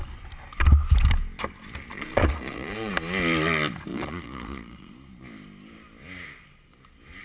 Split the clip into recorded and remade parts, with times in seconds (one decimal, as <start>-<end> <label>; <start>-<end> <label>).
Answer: 0.0-1.9 recorded; 1.9-2.9 remade; 2.9-3.9 recorded; 3.9-4.9 remade; 4.9-7.2 recorded